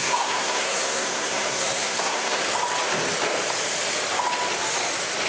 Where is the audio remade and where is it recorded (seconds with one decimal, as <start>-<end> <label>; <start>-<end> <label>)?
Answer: 0.0-2.4 remade; 2.4-5.3 recorded